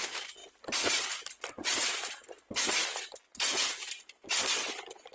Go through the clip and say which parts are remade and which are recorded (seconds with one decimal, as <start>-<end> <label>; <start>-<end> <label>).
0.0-0.4 recorded; 0.4-1.5 remade; 1.5-5.1 recorded